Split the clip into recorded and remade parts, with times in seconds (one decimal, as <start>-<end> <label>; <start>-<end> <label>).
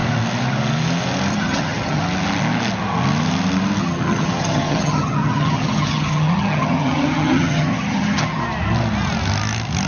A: 0.0-1.3 recorded; 1.3-2.0 remade; 2.0-3.8 recorded; 3.8-8.4 remade; 8.4-9.9 recorded